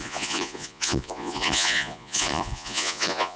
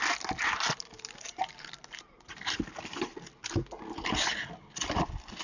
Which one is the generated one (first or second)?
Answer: first